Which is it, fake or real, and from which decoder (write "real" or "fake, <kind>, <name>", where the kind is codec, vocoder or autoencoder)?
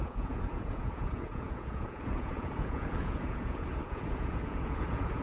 fake, vocoder, Vocos